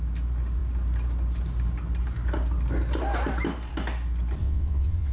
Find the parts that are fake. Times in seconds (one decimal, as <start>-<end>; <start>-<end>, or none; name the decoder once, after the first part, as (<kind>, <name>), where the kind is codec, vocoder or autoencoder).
4.4-5.1 (vocoder, WaveNeXt)